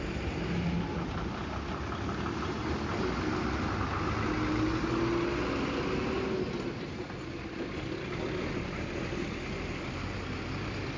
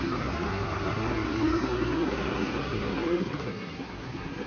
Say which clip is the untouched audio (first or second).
first